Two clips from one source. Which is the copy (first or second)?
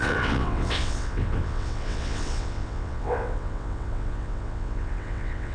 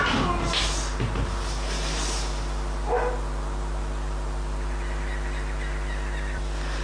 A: first